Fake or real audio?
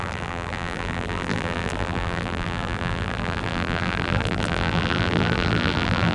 fake